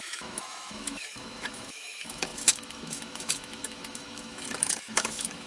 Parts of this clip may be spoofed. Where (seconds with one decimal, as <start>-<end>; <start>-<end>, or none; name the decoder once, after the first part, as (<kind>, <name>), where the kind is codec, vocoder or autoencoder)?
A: 0.0-5.5 (autoencoder, DAC-VAE)